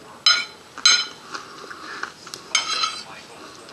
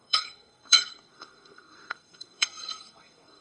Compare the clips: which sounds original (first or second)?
first